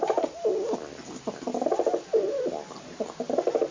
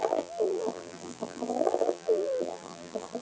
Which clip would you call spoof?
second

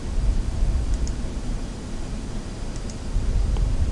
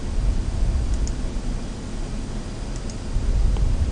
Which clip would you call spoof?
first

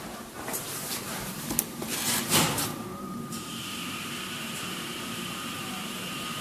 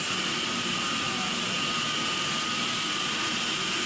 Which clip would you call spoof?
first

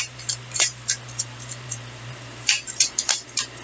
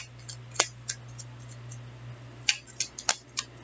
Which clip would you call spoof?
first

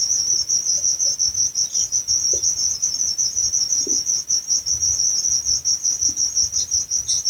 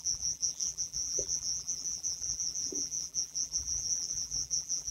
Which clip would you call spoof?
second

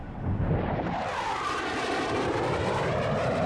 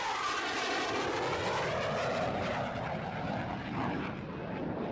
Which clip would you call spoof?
first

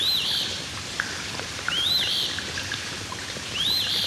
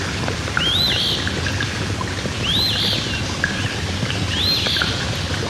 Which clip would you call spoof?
first